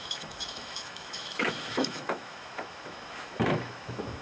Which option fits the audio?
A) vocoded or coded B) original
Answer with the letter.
A